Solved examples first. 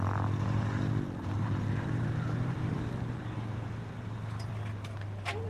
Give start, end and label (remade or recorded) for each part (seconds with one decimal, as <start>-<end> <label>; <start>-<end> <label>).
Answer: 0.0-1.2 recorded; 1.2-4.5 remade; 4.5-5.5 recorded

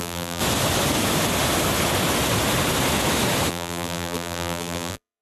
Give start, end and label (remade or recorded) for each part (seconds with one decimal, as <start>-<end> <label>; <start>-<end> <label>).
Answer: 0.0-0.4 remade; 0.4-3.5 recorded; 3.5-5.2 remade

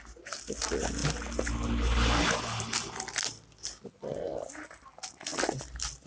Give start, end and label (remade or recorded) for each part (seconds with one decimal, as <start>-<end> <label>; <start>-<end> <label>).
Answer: 0.0-6.1 recorded